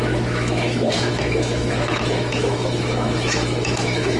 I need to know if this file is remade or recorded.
remade